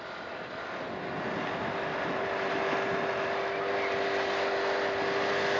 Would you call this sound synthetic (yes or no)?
no